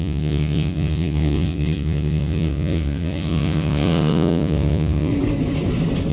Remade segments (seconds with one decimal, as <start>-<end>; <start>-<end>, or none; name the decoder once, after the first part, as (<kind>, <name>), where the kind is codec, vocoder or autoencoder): 0.0-5.1 (vocoder, Vocos)